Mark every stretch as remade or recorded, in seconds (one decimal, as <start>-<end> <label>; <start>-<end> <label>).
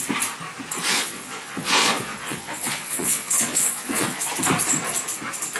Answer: 0.0-0.9 recorded; 0.9-4.3 remade; 4.3-5.6 recorded